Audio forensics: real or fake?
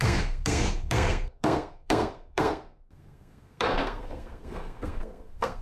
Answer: fake